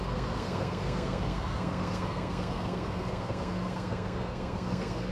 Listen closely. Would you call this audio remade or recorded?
remade